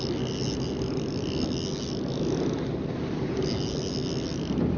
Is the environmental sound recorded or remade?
recorded